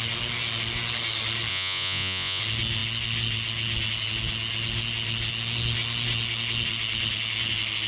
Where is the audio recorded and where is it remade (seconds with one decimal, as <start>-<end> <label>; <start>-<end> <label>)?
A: 0.0-1.5 recorded; 1.5-2.4 remade; 2.4-7.9 recorded